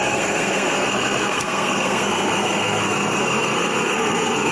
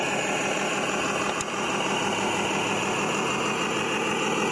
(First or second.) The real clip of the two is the second